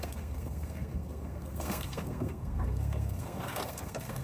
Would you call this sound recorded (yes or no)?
no